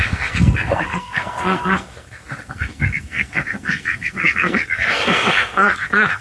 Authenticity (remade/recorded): remade